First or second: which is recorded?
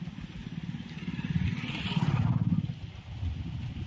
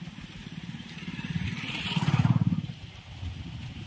first